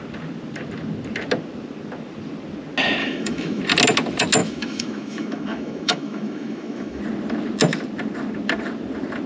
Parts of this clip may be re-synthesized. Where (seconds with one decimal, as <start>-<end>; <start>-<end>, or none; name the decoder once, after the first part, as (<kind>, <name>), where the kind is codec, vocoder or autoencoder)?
3.0-3.6 (autoencoder, DAC-VAE); 4.4-7.0